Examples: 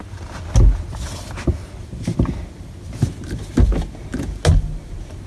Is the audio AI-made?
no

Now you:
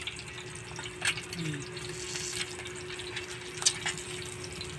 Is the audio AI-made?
no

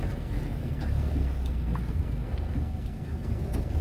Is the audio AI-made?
yes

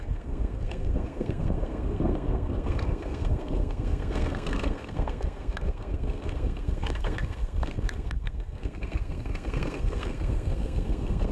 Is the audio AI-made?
yes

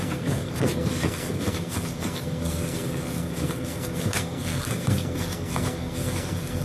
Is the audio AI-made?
yes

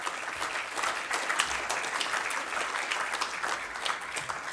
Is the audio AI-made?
no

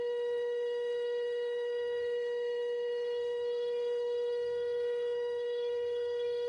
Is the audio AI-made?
yes